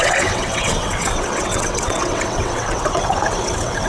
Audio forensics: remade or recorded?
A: remade